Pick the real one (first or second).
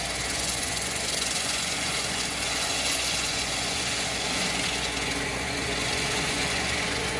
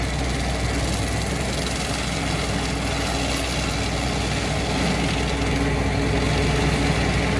second